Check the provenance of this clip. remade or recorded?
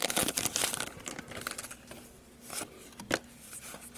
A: recorded